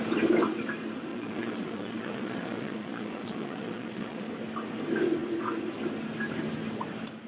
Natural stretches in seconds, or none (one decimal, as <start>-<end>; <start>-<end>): 0.0-1.1; 4.3-7.3